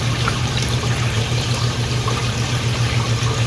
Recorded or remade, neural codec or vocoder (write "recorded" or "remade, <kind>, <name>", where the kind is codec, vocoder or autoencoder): remade, vocoder, BigVGAN v2